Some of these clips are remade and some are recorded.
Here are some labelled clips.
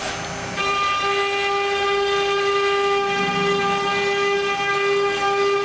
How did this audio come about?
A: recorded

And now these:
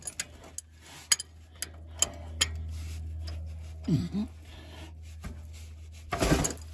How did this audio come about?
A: recorded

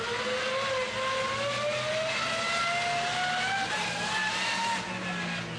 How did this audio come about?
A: recorded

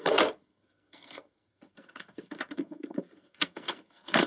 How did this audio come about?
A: remade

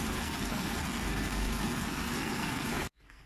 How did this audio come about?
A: remade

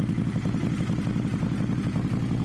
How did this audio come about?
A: recorded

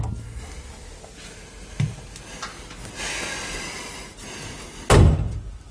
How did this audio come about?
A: recorded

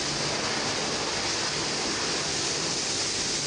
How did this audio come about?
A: recorded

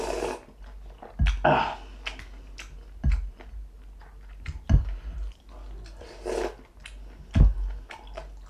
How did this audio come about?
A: recorded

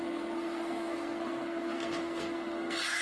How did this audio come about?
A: remade